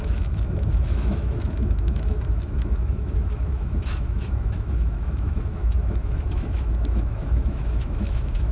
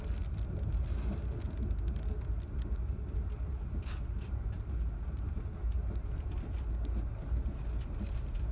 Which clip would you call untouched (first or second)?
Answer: second